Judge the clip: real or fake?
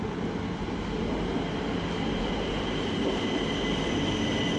real